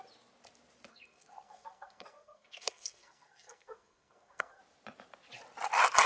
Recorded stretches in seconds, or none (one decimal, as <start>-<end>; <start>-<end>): 0.0-0.9; 4.6-6.1